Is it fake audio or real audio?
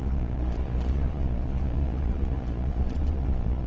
fake